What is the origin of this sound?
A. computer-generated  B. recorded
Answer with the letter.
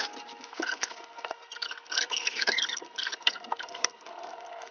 A